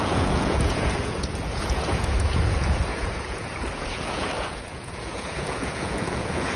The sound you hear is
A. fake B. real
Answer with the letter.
A